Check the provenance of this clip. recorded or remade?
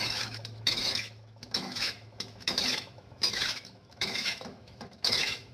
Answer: remade